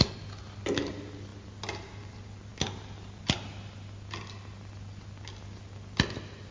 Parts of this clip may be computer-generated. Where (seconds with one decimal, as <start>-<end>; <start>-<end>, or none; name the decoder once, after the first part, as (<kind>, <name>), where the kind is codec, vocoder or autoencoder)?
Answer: none